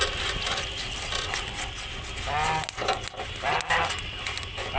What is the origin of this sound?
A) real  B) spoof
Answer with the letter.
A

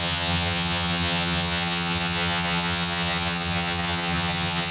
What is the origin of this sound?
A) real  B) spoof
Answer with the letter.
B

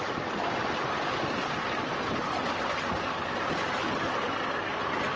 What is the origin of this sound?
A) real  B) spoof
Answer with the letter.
A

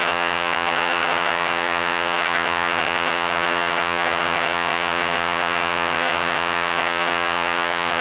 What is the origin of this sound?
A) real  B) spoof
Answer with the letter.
B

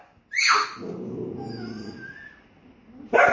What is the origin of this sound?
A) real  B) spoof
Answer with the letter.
A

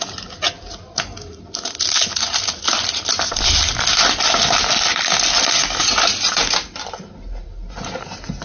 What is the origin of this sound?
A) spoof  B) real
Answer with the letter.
B